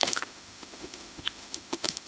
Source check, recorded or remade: remade